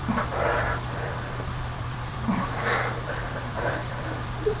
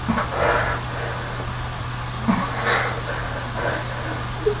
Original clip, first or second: second